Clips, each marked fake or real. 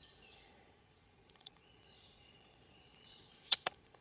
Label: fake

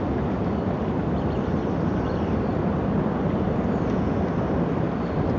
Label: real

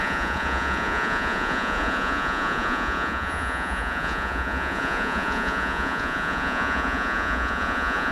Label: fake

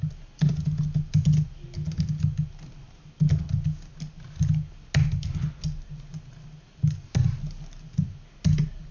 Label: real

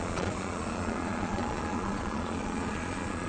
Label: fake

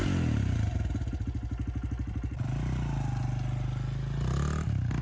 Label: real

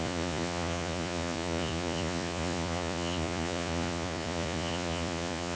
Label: fake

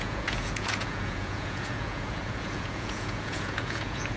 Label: fake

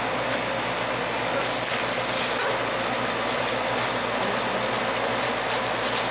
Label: real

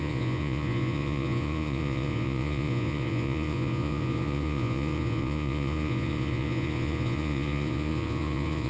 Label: fake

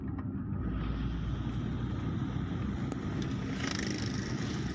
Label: real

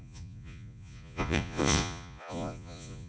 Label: fake